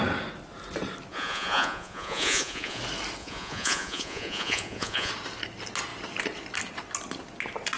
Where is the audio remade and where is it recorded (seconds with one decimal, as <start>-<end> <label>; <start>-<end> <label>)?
0.0-1.1 recorded; 1.1-2.8 remade; 2.8-3.2 recorded; 3.2-5.1 remade; 5.1-7.8 recorded